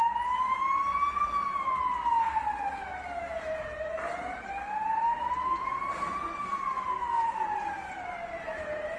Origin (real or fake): real